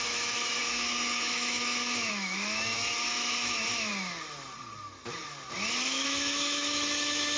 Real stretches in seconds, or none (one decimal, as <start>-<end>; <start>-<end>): 3.9-5.7